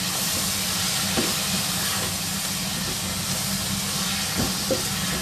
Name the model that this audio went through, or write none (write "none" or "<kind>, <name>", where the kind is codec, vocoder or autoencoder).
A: none